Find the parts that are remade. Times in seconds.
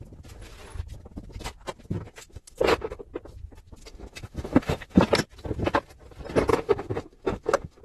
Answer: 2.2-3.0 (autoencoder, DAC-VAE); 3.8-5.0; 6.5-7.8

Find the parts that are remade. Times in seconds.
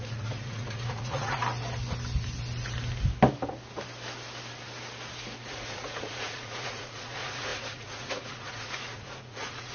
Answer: 0.0-1.4 (vocoder, Vocos); 5.5-9.7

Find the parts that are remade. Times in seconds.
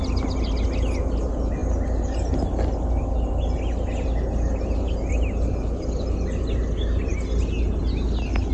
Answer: none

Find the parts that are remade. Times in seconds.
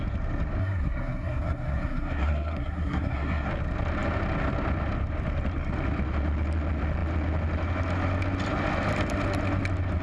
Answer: 0.6-3.5 (codec, SNAC)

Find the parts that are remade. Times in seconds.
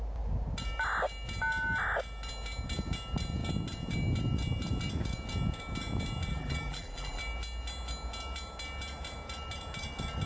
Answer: 6.3-7.2 (vocoder, BigVGAN v2)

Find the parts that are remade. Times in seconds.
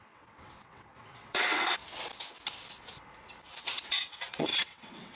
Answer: 0.0-1.8 (vocoder, WaveNeXt); 3.6-5.2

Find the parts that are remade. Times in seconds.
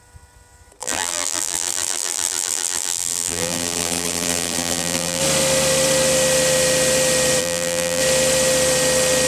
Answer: 0.8-5.2 (vocoder, BigVGAN v2); 7.4-8.0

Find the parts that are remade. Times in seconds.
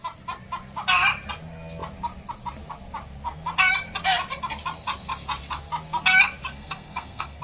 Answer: 6.4-7.4 (codec, SNAC)